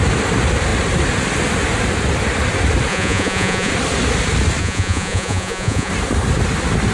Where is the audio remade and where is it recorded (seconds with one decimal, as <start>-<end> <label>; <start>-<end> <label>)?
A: 0.0-2.9 recorded; 2.9-3.7 remade; 3.7-4.6 recorded; 4.6-5.9 remade; 5.9-6.9 recorded